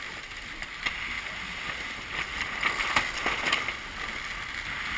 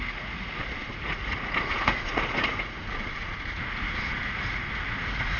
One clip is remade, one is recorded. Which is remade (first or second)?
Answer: second